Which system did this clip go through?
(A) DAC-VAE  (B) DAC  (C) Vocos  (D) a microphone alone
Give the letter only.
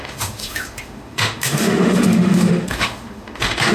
A